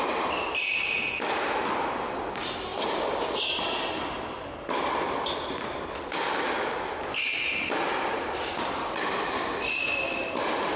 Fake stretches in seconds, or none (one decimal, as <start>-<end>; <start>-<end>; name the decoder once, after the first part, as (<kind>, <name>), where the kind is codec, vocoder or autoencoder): none

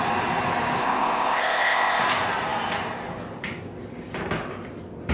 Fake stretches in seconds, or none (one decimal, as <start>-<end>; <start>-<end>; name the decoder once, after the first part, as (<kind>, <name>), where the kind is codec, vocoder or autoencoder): 0.8-2.0 (codec, ZipCodec)

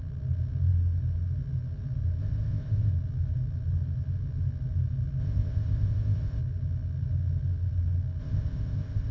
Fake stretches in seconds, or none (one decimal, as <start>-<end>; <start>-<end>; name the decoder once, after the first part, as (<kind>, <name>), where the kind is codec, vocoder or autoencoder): 2.2-2.9 (codec, ZipCodec); 5.2-6.4; 8.2-9.1

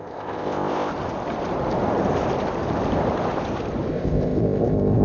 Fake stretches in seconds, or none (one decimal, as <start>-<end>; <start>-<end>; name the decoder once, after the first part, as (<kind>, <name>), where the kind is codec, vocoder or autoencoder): 0.0-0.9 (codec, ZipCodec); 3.9-5.0

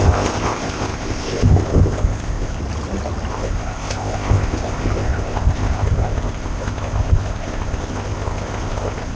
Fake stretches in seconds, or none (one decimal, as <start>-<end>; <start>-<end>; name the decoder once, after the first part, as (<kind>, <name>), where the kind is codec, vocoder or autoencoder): 0.0-2.6 (codec, ZipCodec); 3.3-9.1

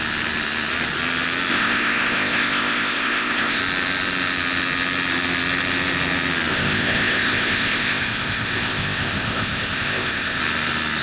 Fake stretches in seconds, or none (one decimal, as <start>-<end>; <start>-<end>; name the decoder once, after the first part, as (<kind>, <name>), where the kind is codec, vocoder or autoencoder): 1.5-3.6 (codec, ZipCodec); 6.5-10.4

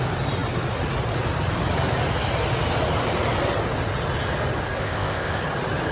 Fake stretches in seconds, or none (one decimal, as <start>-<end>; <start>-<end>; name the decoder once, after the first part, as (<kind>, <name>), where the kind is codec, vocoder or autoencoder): 4.8-5.4 (codec, ZipCodec)